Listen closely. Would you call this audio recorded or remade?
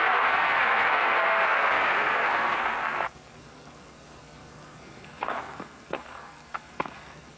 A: remade